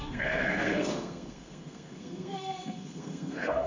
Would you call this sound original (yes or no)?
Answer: no